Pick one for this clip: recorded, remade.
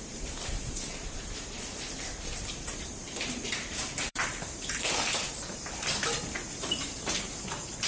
remade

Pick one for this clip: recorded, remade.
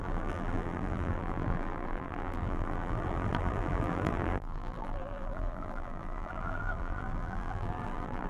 remade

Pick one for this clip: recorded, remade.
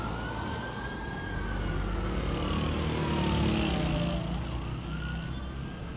recorded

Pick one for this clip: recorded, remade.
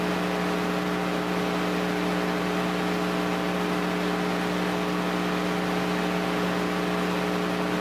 recorded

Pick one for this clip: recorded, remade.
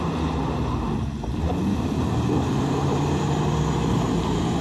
recorded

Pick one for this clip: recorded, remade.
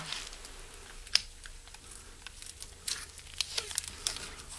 recorded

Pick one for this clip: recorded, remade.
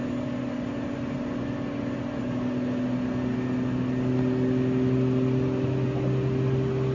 recorded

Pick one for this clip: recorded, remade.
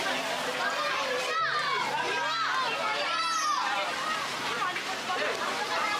remade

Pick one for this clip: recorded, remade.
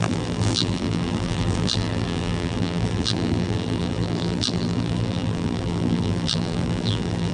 remade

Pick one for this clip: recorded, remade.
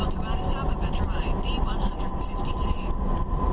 recorded